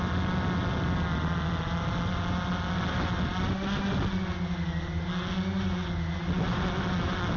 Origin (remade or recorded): recorded